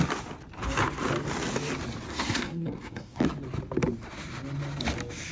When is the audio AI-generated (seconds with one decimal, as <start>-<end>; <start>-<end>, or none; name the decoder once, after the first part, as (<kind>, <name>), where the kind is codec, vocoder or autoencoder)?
2.1-3.2 (codec, SNAC)